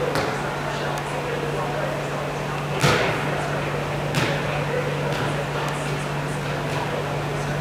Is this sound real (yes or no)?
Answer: yes